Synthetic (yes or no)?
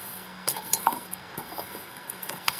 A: yes